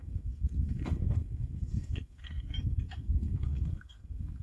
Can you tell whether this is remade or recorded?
remade